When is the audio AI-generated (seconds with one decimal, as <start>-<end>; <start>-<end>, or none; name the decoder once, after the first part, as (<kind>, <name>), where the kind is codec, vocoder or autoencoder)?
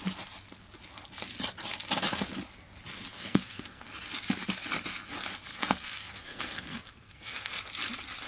3.1-3.9 (codec, SNAC); 5.5-7.5